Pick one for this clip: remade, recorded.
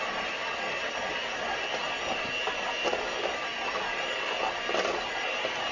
recorded